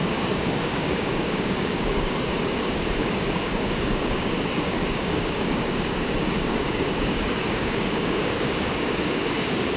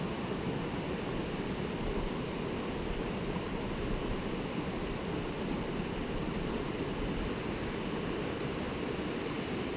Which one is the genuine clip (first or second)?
second